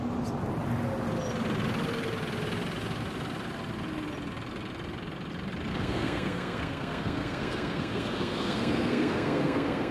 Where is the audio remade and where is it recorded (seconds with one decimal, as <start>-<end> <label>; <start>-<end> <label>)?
0.0-5.7 recorded; 5.7-9.9 remade